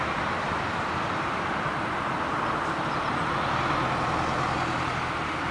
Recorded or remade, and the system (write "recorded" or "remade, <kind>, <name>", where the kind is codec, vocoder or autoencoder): recorded